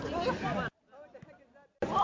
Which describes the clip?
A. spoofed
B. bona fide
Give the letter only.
B